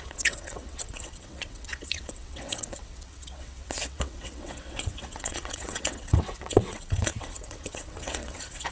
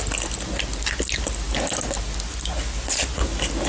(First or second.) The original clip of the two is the second